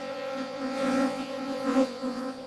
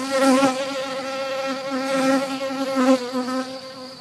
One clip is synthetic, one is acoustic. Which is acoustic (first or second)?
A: second